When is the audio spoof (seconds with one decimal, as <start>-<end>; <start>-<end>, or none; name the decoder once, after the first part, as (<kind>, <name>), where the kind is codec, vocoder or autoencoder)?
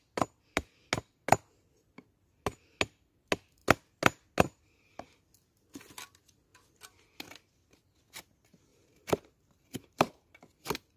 8.7-10.4 (vocoder, BigVGAN v2)